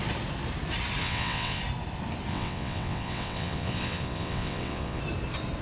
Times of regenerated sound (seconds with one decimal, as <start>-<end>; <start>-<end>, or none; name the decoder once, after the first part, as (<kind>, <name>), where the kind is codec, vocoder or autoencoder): 1.0-1.6 (vocoder, WaveNeXt); 2.3-5.0